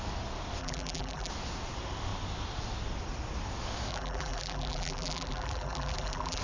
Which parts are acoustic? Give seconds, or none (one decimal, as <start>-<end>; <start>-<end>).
0.0-0.6; 1.3-3.9